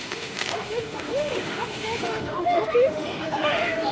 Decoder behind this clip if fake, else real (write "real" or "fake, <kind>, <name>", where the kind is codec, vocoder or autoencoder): fake, autoencoder, DAC-VAE